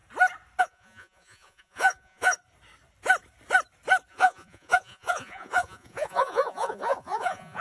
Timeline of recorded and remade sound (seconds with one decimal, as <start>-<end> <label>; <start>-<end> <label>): 0.0-0.6 recorded; 0.6-2.4 remade; 2.4-4.1 recorded; 4.1-7.6 remade